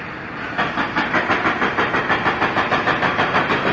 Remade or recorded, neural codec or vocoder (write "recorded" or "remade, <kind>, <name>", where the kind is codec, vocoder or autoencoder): recorded